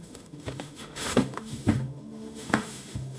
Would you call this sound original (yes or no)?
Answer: no